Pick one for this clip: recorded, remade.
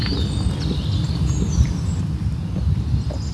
recorded